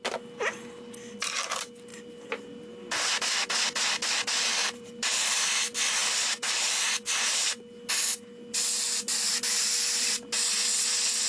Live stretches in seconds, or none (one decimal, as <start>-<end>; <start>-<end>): 0.0-1.9; 5.2-11.3